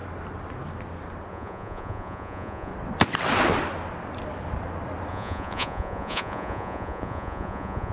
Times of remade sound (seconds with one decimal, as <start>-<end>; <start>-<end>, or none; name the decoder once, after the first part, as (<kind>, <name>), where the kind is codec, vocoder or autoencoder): 1.3-2.7 (vocoder, Vocos); 5.1-7.9